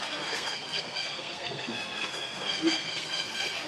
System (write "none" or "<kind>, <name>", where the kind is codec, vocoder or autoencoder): codec, SNAC